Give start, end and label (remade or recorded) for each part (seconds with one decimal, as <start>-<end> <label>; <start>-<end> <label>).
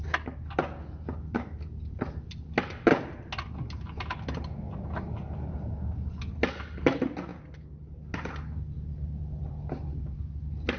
0.0-10.8 recorded